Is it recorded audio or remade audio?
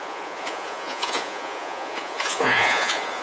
remade